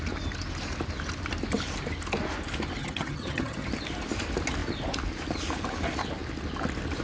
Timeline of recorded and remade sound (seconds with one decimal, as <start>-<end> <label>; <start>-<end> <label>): 0.0-2.8 recorded; 2.8-3.7 remade; 3.7-7.0 recorded